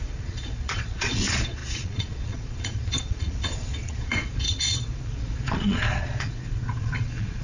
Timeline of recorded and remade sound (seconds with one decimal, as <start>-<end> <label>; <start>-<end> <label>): 0.0-7.4 remade